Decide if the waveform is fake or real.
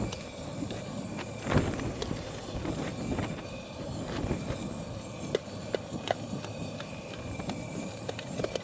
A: real